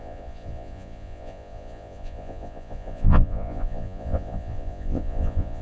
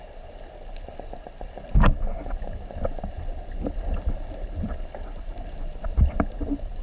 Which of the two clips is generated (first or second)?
first